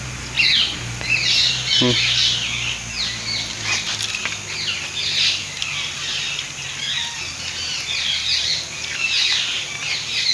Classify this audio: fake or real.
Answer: real